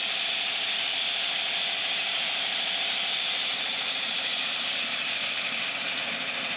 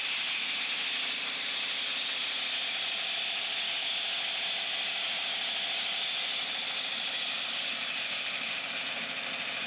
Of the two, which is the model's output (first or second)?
first